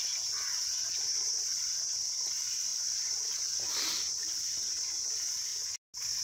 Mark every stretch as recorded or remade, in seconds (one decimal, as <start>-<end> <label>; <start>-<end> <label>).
0.0-2.7 recorded; 2.7-5.1 remade; 5.1-6.2 recorded